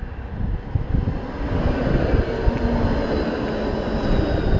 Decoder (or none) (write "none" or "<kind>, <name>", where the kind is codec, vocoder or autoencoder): none